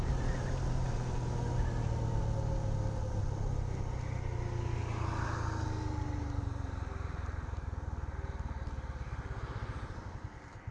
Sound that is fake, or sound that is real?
real